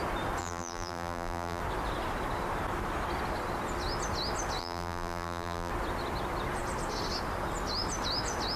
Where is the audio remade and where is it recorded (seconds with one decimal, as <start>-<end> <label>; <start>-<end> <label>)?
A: 0.0-0.4 recorded; 0.4-1.6 remade; 1.6-4.6 recorded; 4.6-5.7 remade; 5.7-8.6 recorded